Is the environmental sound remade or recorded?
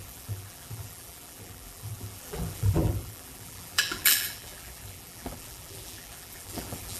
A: remade